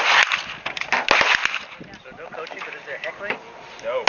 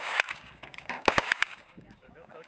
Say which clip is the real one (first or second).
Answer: first